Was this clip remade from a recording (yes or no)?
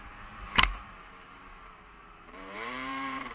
yes